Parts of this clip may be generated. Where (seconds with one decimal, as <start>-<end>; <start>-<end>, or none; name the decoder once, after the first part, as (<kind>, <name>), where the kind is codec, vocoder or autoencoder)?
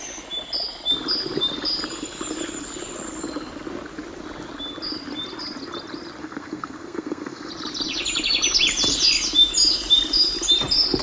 6.2-7.5 (codec, SNAC)